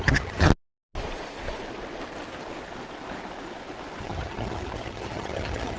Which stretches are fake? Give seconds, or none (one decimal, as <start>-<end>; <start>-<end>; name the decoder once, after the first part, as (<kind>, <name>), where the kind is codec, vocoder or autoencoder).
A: 0.0-0.5 (vocoder, HiFi-GAN); 4.0-5.8